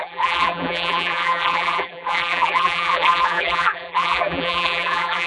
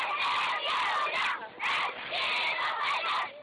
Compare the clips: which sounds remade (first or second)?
first